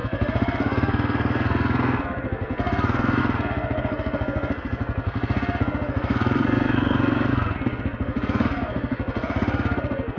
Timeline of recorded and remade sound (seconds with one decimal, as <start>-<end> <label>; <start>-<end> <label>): 0.0-10.2 remade